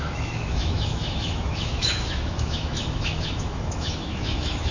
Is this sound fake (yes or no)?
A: yes